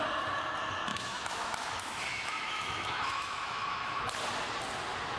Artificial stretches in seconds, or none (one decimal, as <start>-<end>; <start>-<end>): 0.9-4.0